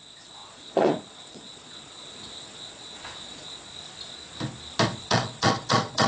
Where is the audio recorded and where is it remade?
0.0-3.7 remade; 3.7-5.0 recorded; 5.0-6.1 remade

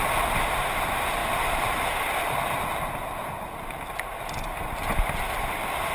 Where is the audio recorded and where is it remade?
0.0-5.9 recorded

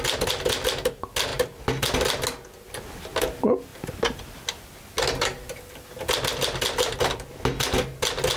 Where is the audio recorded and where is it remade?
0.0-8.4 recorded

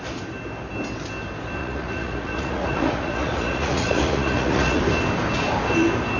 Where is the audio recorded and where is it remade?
0.0-1.6 recorded; 1.6-4.8 remade; 4.8-6.2 recorded

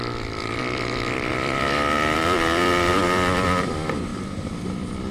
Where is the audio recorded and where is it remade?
0.0-5.1 remade